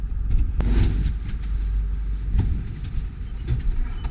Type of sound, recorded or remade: recorded